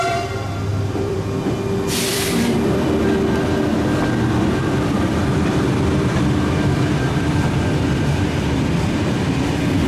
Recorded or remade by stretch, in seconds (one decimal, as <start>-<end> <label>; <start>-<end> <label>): 0.0-0.7 recorded; 0.7-1.2 remade; 1.2-2.1 recorded; 2.1-3.1 remade; 3.1-3.7 recorded; 3.7-8.5 remade; 8.5-9.9 recorded